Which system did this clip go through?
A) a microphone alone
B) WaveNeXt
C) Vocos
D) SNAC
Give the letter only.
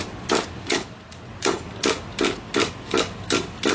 A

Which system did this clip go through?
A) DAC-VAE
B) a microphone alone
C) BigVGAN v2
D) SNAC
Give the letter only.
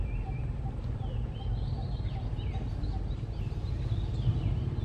B